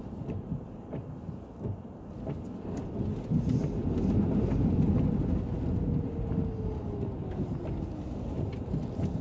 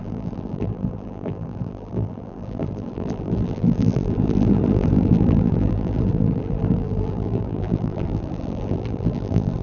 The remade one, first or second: second